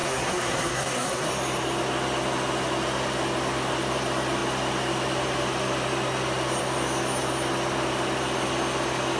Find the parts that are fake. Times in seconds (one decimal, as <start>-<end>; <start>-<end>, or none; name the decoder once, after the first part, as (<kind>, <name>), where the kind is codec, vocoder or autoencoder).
0.0-1.3 (codec, SNAC)